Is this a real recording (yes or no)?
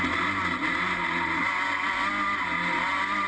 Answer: yes